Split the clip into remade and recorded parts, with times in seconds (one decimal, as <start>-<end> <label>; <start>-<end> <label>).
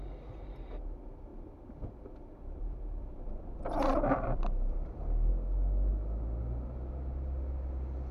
0.0-1.3 recorded; 1.3-5.3 remade; 5.3-5.9 recorded; 5.9-6.4 remade; 6.4-8.1 recorded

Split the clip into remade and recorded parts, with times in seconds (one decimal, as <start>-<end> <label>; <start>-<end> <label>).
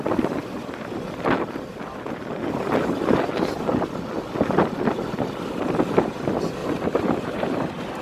0.0-6.6 recorded; 6.6-7.6 remade; 7.6-8.0 recorded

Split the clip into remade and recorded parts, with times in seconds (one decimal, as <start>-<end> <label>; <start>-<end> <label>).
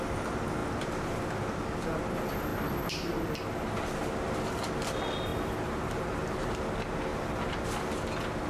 0.0-2.5 recorded; 2.5-3.3 remade; 3.3-5.3 recorded; 5.3-6.6 remade; 6.6-8.5 recorded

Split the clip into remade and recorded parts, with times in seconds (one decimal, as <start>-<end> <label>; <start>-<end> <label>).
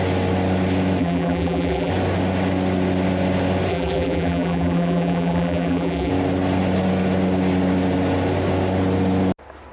0.0-1.0 recorded; 1.0-1.9 remade; 1.9-3.7 recorded; 3.7-6.1 remade; 6.1-9.7 recorded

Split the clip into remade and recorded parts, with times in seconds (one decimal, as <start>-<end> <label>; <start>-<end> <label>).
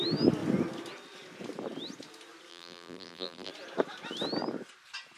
0.0-2.5 recorded; 2.5-3.5 remade; 3.5-5.2 recorded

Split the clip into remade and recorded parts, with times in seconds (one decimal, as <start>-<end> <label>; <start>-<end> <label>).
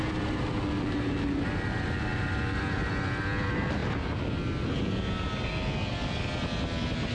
0.0-2.1 recorded; 2.1-2.6 remade; 2.6-7.1 recorded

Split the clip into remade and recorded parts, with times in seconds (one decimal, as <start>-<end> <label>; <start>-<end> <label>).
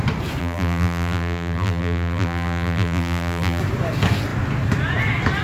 0.0-0.4 recorded; 0.4-3.6 remade; 3.6-5.4 recorded